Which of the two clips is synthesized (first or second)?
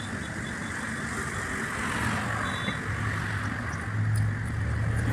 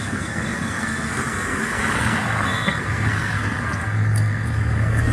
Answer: second